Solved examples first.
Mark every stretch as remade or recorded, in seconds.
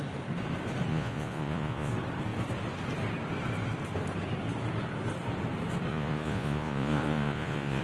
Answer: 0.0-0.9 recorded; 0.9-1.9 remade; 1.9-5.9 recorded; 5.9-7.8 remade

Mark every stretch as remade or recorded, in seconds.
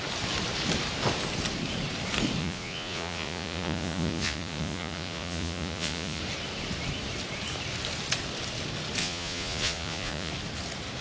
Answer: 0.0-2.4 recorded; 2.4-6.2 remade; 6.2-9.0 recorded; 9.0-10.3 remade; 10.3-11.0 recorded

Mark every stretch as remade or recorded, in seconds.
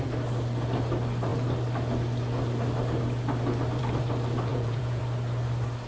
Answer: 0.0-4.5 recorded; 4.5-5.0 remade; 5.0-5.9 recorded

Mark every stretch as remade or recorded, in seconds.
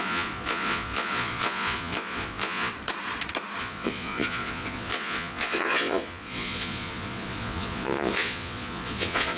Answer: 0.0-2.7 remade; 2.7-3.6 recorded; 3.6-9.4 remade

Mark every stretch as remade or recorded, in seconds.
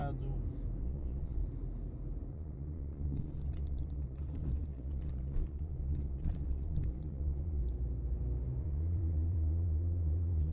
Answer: 0.0-0.8 recorded; 0.8-1.4 remade; 1.4-2.3 recorded; 2.3-7.6 remade; 7.6-8.6 recorded; 8.6-10.5 remade